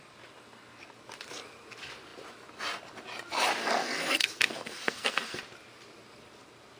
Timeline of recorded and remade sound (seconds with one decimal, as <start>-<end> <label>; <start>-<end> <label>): 0.0-3.6 recorded; 3.6-5.4 remade; 5.4-6.8 recorded